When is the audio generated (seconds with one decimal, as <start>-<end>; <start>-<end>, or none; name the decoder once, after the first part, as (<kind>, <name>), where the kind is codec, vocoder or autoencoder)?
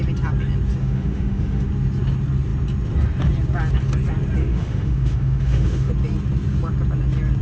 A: 0.8-1.7 (autoencoder, DAC-VAE); 4.4-5.9